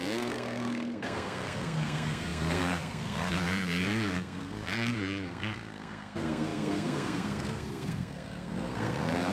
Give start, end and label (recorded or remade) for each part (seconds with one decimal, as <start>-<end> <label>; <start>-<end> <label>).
0.0-9.3 remade